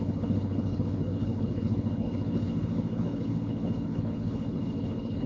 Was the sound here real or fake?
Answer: fake